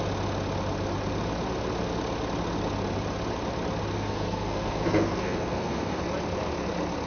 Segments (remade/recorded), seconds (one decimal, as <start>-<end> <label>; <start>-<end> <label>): 0.0-3.9 recorded; 3.9-6.0 remade; 6.0-7.1 recorded